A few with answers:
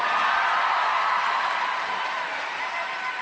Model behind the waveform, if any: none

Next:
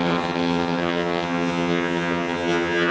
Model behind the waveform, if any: vocoder, HiFi-GAN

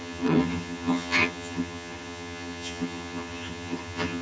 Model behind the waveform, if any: vocoder, HiFi-GAN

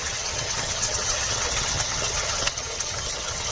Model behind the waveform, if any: vocoder, HiFi-GAN